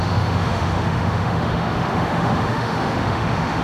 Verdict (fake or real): fake